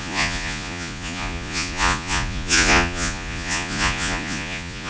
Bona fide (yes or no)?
no